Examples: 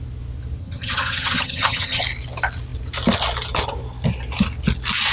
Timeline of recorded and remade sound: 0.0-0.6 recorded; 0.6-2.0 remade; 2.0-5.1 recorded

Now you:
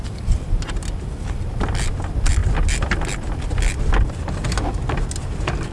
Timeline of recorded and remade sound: 0.0-5.7 recorded

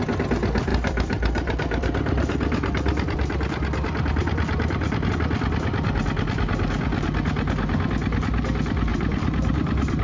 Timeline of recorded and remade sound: 0.0-0.7 recorded; 0.7-5.1 remade; 5.1-8.9 recorded; 8.9-10.0 remade

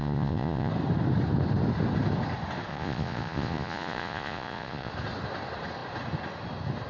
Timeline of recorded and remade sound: 0.0-0.7 remade; 0.7-2.7 recorded; 2.7-4.9 remade; 4.9-6.9 recorded

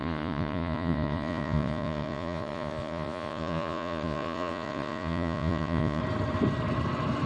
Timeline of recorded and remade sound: 0.0-6.0 remade; 6.0-7.3 recorded